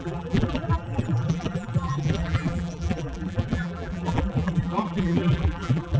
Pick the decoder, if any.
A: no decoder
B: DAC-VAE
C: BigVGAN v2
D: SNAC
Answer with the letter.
C